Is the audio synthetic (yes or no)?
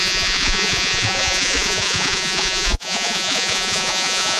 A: yes